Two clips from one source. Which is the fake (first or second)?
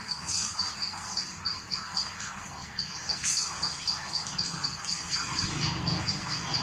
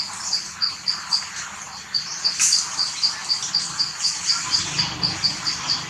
first